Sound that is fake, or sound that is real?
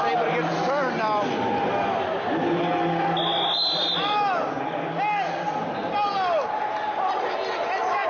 real